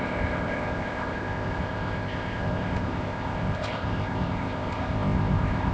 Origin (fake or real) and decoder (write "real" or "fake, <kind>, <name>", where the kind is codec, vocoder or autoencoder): fake, codec, ZipCodec